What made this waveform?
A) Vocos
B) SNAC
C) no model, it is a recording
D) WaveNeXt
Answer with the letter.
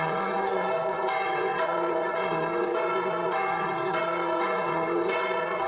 D